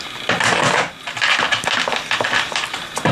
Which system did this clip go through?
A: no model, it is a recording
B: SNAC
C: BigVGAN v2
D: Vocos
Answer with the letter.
A